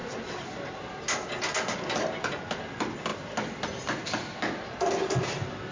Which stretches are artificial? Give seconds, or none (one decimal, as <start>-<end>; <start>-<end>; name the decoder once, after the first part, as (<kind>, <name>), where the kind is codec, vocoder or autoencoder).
none